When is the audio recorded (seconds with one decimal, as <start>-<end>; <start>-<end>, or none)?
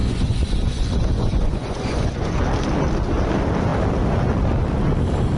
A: 2.4-5.4